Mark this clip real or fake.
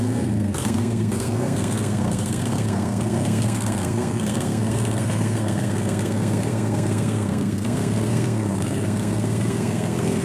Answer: fake